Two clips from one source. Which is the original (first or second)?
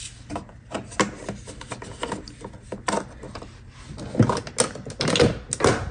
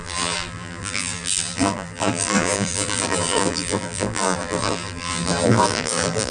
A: first